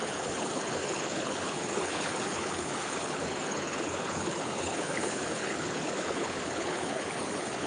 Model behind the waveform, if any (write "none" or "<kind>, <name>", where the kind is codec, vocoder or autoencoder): codec, HILCodec